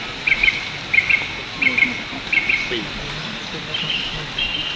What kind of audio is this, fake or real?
real